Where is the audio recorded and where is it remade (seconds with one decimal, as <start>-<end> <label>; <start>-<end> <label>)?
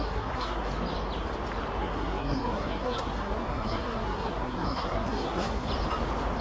0.0-0.7 remade; 0.7-1.8 recorded; 1.8-5.7 remade; 5.7-6.4 recorded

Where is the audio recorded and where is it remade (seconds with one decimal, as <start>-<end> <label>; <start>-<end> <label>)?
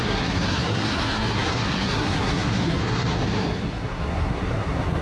0.0-5.0 remade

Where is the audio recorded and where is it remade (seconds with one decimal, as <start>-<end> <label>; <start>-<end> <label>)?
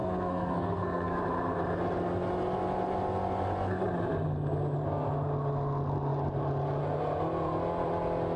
0.0-1.2 remade; 1.2-8.4 recorded